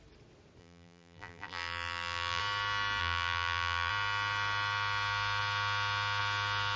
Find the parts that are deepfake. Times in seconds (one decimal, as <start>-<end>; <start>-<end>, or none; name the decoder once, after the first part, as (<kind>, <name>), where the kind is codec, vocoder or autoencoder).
0.6-2.4 (vocoder, BigVGAN v2); 3.0-3.9